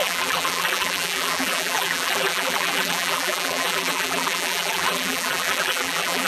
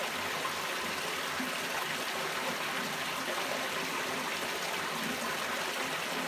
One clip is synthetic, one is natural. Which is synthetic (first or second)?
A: first